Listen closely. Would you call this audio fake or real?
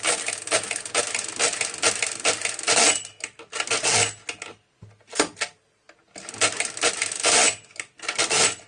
real